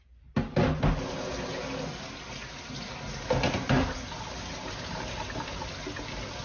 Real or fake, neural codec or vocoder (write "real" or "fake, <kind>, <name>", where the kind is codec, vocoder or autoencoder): real